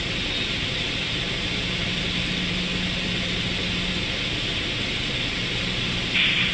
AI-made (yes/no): no